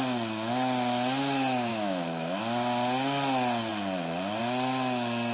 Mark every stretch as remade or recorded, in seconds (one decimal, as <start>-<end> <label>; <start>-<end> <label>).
0.0-1.7 recorded; 1.7-2.4 remade; 2.4-5.3 recorded